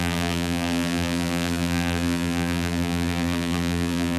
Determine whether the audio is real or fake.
fake